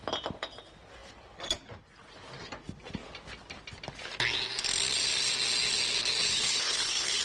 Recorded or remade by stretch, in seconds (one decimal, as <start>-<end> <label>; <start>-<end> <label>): 0.0-6.3 recorded; 6.3-7.2 remade